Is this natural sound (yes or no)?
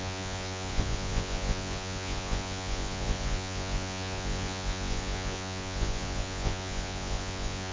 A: no